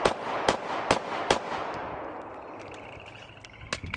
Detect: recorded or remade recorded